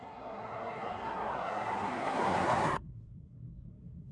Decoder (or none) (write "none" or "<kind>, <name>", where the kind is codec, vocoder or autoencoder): codec, SNAC